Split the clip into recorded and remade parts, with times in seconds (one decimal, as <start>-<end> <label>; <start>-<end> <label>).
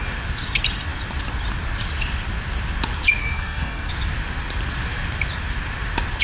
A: 0.0-3.2 recorded; 3.2-3.9 remade; 3.9-6.2 recorded